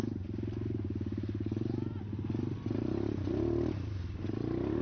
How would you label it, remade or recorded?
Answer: recorded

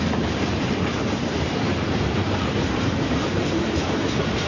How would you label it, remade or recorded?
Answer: remade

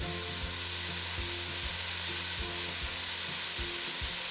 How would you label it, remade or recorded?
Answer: recorded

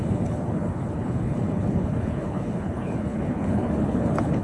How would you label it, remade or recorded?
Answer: remade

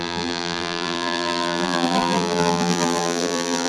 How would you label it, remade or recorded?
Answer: remade